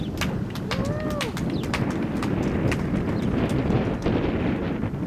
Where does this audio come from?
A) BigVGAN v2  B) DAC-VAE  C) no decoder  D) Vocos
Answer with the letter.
C